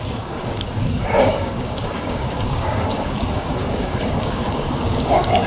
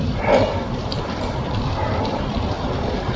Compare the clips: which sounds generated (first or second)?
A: first